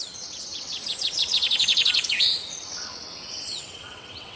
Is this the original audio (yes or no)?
no